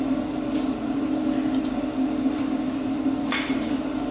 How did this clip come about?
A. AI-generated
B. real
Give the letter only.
B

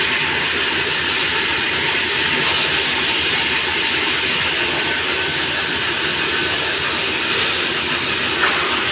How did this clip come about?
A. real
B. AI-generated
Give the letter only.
A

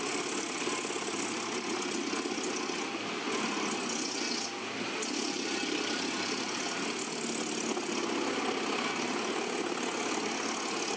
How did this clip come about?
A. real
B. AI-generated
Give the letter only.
A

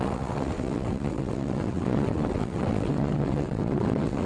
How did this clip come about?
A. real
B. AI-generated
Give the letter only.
B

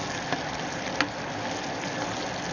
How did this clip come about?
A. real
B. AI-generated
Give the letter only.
A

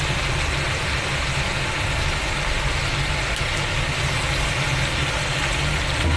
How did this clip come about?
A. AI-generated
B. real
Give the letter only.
B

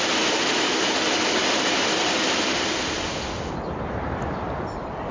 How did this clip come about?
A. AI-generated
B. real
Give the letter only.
B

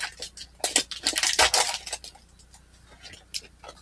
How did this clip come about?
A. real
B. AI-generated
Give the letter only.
A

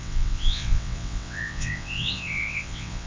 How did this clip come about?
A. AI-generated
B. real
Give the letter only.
A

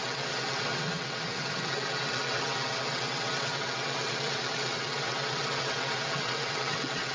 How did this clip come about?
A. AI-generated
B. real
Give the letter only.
A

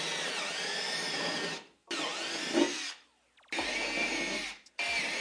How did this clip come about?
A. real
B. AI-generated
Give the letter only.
A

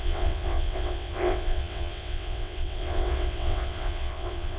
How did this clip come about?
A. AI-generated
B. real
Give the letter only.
A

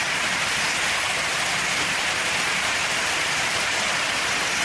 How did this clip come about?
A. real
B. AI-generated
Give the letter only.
A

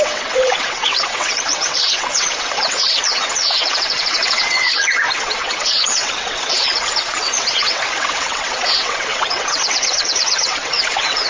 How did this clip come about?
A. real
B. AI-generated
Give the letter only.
B